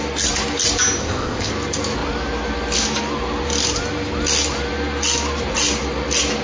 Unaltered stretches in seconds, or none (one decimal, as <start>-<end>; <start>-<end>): 0.0-1.0; 1.5-6.4